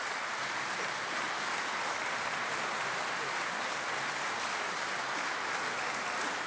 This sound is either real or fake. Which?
real